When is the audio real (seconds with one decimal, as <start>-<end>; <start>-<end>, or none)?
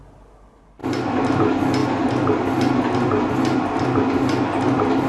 0.0-5.1